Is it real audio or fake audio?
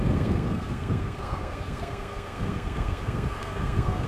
fake